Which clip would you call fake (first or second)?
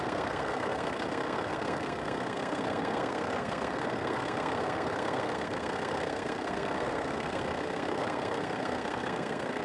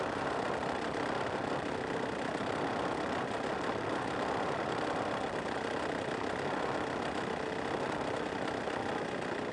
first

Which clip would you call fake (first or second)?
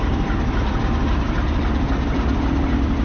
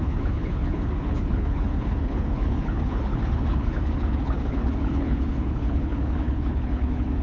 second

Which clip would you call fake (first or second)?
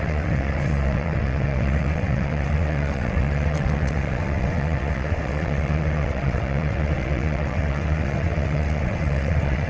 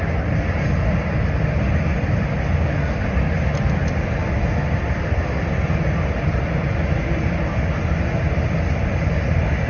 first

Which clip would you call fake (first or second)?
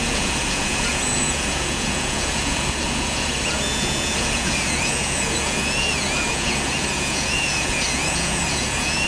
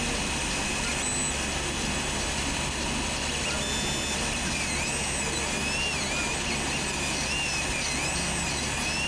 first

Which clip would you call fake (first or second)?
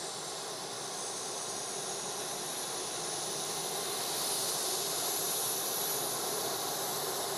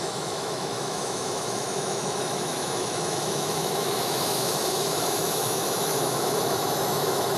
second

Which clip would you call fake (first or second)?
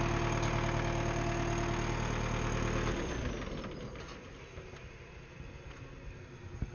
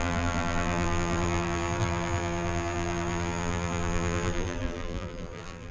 second